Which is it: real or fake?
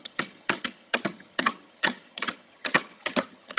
fake